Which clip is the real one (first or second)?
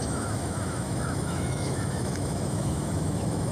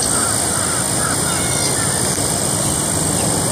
second